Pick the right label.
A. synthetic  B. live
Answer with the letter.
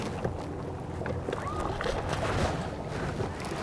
B